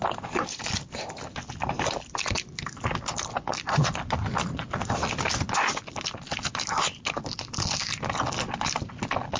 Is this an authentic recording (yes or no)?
yes